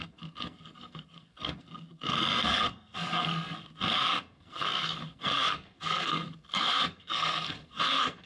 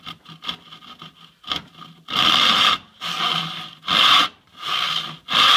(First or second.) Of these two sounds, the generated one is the first